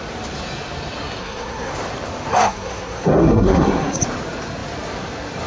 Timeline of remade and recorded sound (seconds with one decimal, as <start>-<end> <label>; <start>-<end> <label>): 0.0-1.2 recorded; 1.2-1.7 remade; 1.7-2.3 recorded; 2.3-4.0 remade; 4.0-5.5 recorded